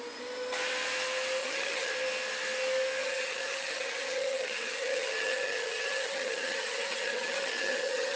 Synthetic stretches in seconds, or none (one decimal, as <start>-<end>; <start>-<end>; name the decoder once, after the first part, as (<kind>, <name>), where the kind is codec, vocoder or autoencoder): 1.4-1.9 (vocoder, HiFi-GAN); 3.0-8.2